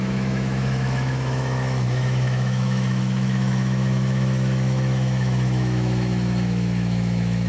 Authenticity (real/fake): fake